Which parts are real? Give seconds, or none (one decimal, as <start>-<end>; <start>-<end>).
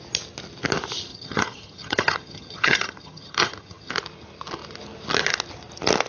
0.0-1.1; 3.9-6.1